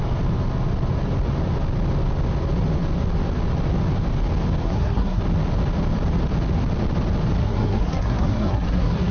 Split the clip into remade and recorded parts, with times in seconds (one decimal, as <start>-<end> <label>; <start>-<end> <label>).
0.0-4.6 recorded; 4.6-5.2 remade; 5.2-7.4 recorded; 7.4-9.1 remade